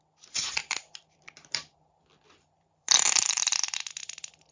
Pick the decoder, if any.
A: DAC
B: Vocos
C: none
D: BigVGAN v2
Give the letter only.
D